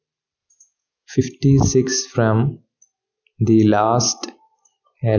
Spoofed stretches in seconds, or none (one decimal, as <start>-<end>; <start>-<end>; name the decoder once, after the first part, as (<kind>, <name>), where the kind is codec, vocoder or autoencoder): 0.4-1.2 (vocoder, Vocos)